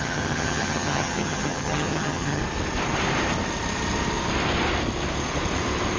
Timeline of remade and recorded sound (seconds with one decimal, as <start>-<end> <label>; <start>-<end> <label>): 0.0-2.4 remade; 2.4-6.0 recorded